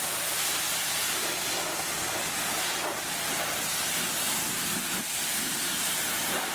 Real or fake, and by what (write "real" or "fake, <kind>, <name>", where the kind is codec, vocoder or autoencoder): real